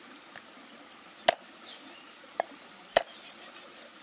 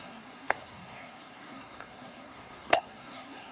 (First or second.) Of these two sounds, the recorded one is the first